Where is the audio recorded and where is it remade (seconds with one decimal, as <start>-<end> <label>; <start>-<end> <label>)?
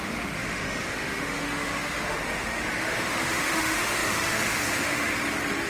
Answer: 0.0-5.1 remade; 5.1-5.7 recorded